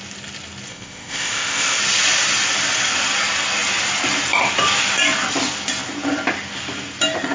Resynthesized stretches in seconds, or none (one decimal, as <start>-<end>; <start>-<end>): 0.7-1.8